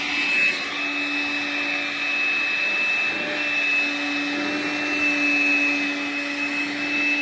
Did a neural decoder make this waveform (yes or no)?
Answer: no